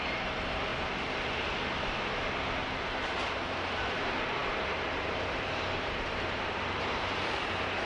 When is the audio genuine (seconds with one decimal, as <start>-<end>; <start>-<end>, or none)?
0.7-3.8